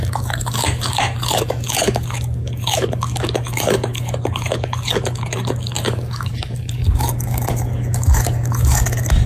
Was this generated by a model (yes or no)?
yes